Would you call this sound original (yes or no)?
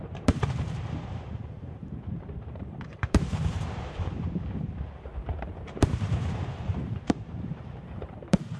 no